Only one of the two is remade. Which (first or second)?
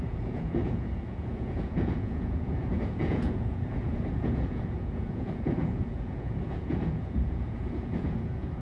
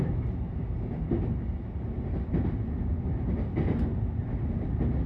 first